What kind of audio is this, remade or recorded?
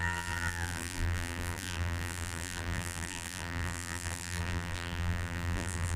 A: remade